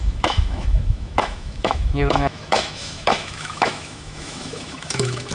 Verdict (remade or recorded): remade